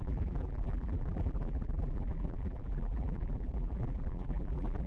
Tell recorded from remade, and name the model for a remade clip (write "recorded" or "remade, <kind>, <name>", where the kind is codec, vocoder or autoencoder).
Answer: remade, vocoder, BigVGAN v2